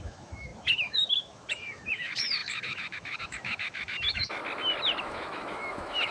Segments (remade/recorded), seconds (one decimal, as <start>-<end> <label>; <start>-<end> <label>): 0.0-4.4 remade; 4.4-5.0 recorded; 5.0-6.1 remade

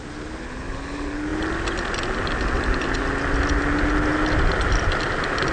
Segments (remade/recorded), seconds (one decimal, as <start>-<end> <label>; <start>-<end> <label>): 0.0-5.5 recorded